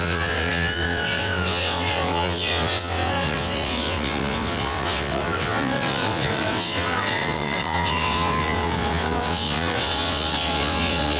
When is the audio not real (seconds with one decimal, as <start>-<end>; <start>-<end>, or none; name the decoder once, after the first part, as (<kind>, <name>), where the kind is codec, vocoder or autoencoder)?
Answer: 0.0-11.2 (vocoder, WaveNeXt)